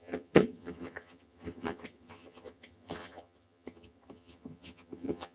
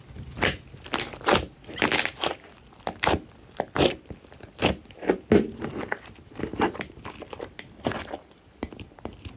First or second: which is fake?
first